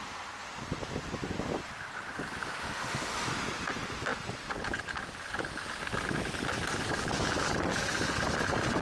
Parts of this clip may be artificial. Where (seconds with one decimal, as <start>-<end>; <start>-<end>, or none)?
2.6-3.3